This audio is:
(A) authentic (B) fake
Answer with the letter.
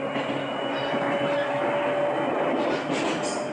A